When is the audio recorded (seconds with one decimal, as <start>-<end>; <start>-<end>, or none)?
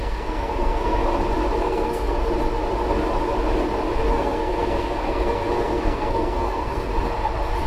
1.0-1.6; 2.2-4.1; 6.9-7.7